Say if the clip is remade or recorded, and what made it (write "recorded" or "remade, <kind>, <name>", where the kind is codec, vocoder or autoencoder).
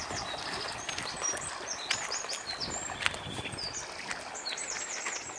recorded